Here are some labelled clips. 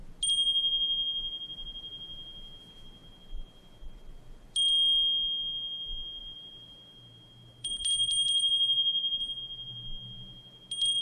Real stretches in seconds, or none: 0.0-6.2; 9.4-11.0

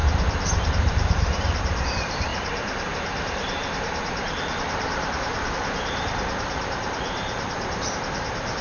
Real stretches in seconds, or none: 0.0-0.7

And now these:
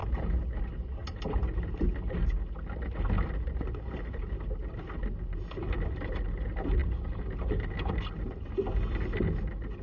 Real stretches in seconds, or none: 0.0-9.8

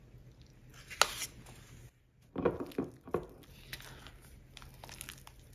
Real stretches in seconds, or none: 0.0-5.5

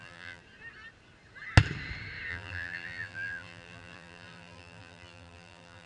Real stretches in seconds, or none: 0.4-2.3

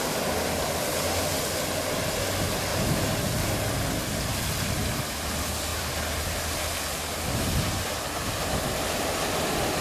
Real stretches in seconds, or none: 0.0-2.7; 3.2-5.7; 6.4-7.1; 8.6-9.8

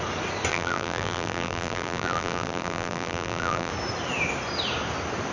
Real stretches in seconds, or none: 0.0-0.5; 3.7-5.3